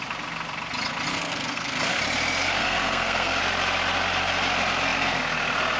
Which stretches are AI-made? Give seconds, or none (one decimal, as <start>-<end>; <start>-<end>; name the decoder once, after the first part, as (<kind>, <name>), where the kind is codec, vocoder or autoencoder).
1.1-2.0 (codec, SNAC); 2.6-3.4